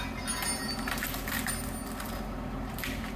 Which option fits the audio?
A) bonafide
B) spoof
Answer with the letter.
A